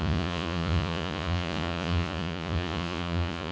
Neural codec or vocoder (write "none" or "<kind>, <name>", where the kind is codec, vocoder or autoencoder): vocoder, Vocos